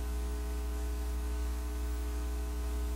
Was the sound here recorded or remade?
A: remade